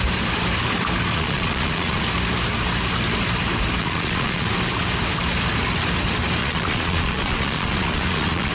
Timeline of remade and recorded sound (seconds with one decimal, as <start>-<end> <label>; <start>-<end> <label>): 0.0-1.1 recorded; 1.1-2.0 remade; 2.0-3.8 recorded; 3.8-4.5 remade; 4.5-6.4 recorded; 6.4-8.5 remade